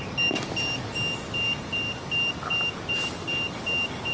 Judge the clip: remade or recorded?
recorded